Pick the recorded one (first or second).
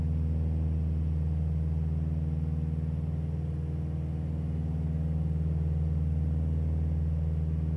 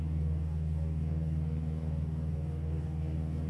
first